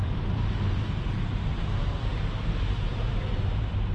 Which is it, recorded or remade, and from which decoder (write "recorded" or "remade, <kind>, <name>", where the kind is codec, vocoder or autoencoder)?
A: remade, vocoder, BigVGAN v2